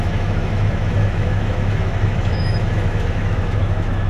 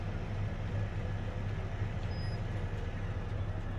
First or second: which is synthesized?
first